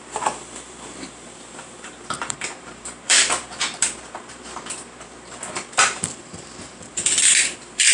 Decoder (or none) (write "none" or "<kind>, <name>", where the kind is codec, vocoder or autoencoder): vocoder, BigVGAN v2